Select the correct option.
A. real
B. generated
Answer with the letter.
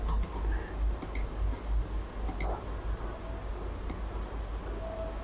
A